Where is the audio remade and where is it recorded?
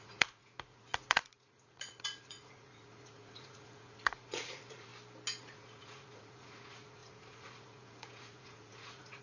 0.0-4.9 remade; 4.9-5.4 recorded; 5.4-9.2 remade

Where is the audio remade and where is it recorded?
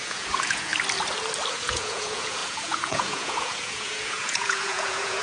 0.0-0.7 remade; 0.7-1.5 recorded; 1.5-5.2 remade